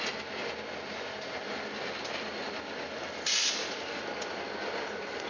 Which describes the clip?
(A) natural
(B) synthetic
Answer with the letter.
A